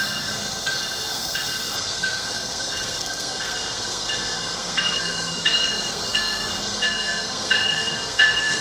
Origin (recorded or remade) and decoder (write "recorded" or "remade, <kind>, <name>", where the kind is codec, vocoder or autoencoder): remade, codec, SNAC